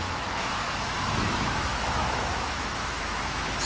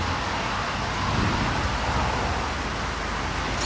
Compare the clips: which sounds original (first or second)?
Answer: second